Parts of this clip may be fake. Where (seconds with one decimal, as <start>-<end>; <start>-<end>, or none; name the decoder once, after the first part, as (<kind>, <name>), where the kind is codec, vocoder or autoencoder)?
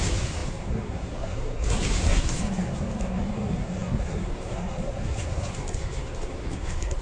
0.0-7.0 (codec, SNAC)